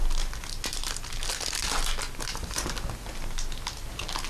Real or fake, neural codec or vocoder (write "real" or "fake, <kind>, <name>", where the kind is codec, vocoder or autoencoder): real